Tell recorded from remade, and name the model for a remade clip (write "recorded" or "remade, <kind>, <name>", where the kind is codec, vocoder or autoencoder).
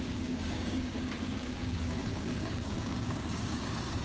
remade, codec, DAC